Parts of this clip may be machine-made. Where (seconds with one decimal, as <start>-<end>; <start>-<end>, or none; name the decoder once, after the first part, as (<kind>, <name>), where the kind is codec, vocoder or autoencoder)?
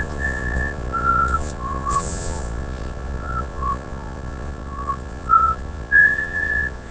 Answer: 0.0-6.9 (vocoder, Vocos)